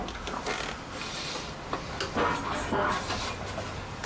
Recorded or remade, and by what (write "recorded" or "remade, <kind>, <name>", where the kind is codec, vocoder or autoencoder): recorded